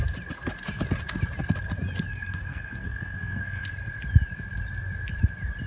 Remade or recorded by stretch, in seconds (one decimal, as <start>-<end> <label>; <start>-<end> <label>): 0.0-2.1 recorded; 2.1-3.7 remade; 3.7-5.7 recorded